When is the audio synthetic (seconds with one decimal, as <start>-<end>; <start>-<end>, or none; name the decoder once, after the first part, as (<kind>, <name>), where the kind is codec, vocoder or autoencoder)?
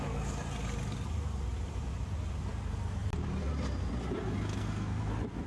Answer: 4.5-5.1 (codec, SNAC)